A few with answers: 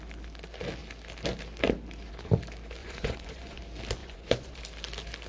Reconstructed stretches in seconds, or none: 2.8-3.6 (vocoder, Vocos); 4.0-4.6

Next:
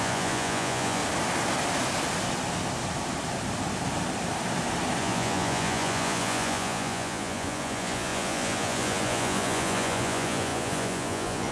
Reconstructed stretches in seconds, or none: 0.0-1.0 (vocoder, Vocos); 5.0-11.5

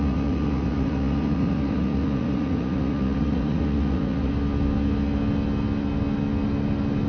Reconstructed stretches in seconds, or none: 0.0-4.3 (vocoder, Vocos)

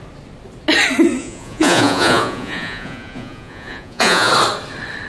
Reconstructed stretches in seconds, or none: 1.2-4.3 (vocoder, Vocos)

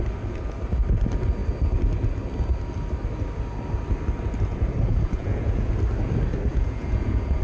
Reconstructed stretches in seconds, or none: 4.5-5.7 (vocoder, Vocos); 6.5-7.4

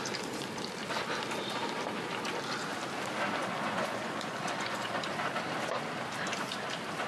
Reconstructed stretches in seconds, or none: 3.4-5.0 (vocoder, Vocos)